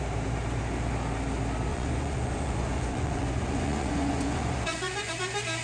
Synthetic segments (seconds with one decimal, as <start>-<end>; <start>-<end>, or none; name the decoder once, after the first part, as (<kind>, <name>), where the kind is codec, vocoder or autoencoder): 1.7-5.1 (vocoder, Vocos)